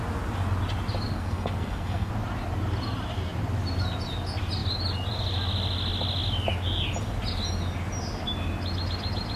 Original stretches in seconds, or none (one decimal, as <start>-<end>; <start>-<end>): 0.0-1.1; 2.1-9.4